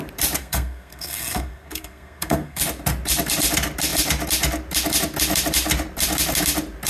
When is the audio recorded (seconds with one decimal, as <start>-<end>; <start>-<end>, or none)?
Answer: 0.0-0.4; 2.6-6.9

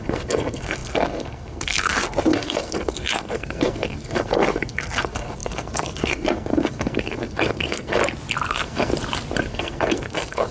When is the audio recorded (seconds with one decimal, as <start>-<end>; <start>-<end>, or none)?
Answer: 8.0-8.5; 8.9-9.5

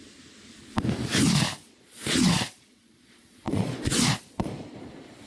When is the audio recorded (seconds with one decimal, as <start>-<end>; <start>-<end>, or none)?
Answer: 0.0-1.6; 4.8-5.3

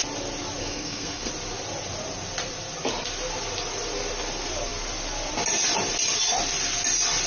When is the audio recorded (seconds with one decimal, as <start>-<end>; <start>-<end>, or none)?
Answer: 0.0-0.6; 1.3-7.3

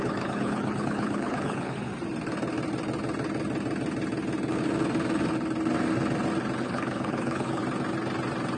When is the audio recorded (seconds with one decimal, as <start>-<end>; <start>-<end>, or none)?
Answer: 1.9-6.6; 7.6-8.6